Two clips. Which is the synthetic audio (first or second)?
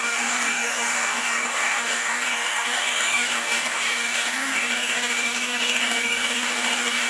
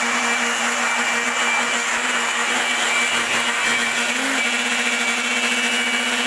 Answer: first